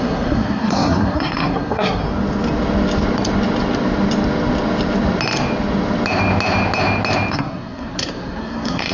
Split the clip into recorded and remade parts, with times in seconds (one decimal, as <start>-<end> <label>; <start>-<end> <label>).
0.0-2.0 remade; 2.0-7.3 recorded; 7.3-8.9 remade